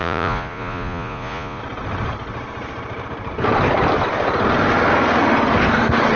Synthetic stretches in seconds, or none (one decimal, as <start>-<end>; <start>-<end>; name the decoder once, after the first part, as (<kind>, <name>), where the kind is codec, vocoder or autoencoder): 0.0-1.6 (vocoder, Vocos)